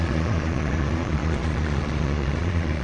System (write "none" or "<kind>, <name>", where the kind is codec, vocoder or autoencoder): vocoder, Vocos